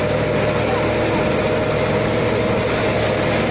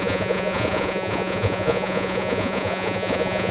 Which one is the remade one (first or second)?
second